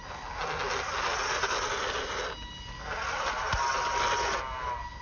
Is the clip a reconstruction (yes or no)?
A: no